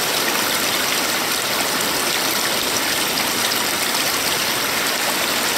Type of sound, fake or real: real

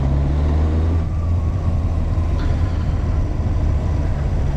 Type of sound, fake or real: real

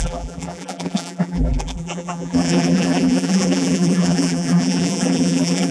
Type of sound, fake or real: fake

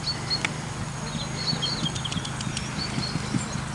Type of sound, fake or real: real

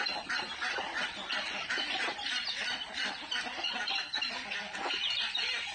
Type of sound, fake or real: real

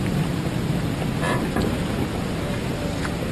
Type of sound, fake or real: real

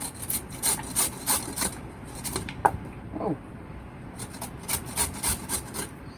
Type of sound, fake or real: fake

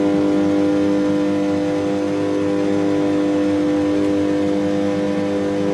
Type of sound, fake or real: real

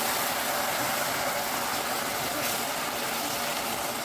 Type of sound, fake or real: fake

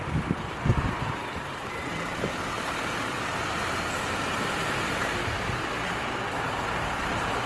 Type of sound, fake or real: fake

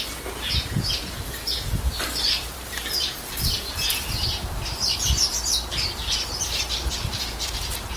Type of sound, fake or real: fake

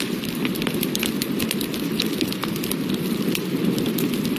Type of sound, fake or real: fake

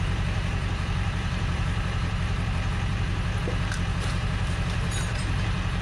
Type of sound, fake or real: fake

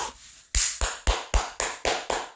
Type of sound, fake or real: real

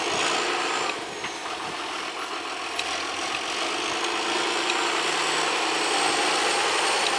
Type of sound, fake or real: real